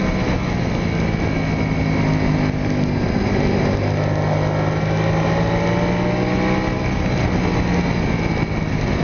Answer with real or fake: real